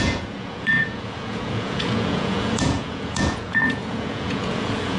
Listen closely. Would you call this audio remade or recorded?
remade